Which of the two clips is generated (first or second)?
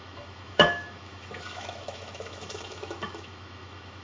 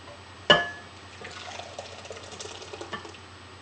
first